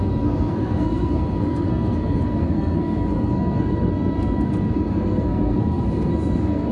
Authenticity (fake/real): fake